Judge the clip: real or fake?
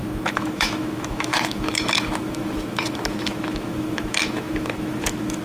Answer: fake